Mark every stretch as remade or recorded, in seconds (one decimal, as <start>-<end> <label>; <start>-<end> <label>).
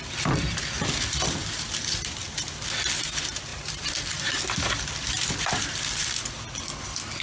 0.0-3.5 recorded; 3.5-6.2 remade; 6.2-7.2 recorded